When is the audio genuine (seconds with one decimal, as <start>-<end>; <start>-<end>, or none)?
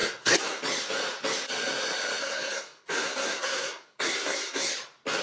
0.6-2.2; 4.7-5.2